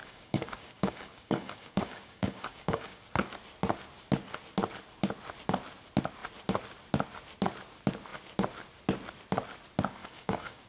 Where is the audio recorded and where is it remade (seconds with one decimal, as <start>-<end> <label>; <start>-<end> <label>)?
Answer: 0.0-3.1 remade; 3.1-10.0 recorded; 10.0-10.7 remade

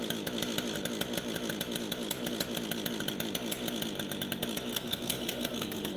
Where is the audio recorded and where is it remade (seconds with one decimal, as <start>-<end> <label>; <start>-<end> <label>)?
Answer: 0.0-4.7 recorded; 4.7-6.0 remade

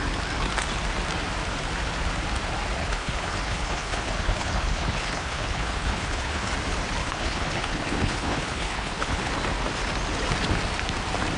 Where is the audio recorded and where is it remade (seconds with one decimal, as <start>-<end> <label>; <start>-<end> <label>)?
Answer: 0.0-2.8 recorded; 2.8-6.5 remade; 6.5-7.0 recorded; 7.0-9.3 remade; 9.3-11.4 recorded